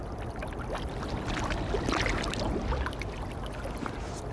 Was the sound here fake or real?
real